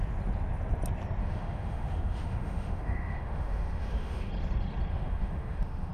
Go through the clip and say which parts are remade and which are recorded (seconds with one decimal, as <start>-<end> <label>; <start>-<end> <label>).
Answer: 0.0-1.2 recorded; 1.2-4.3 remade; 4.3-4.9 recorded; 4.9-5.9 remade